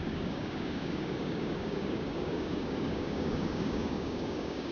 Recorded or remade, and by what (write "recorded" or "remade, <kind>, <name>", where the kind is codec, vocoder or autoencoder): remade, codec, DAC